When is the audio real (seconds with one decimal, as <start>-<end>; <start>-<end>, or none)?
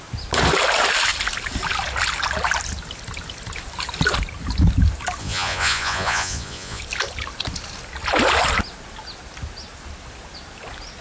0.0-5.2; 6.8-11.0